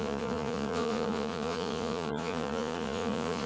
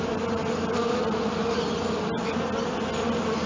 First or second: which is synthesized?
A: first